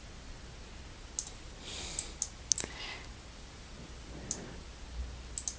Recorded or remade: recorded